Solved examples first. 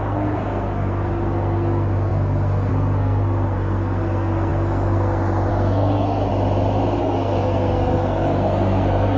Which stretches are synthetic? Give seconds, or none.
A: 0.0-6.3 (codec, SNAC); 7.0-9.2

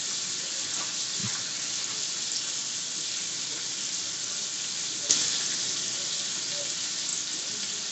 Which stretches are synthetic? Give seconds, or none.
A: none

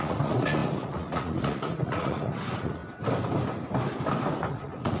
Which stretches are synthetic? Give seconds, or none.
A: 0.0-2.8 (vocoder, Vocos); 4.5-5.0

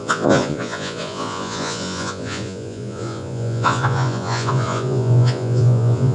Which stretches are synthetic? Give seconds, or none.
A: 0.0-6.1 (vocoder, Vocos)